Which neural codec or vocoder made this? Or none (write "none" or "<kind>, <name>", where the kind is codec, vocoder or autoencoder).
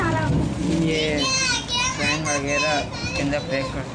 none